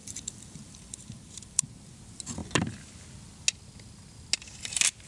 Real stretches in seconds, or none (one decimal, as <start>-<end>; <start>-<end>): 1.6-5.1